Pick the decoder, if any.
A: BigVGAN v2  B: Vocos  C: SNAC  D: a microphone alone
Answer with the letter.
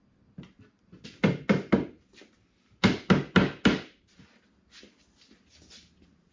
D